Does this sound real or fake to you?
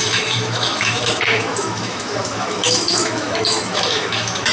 fake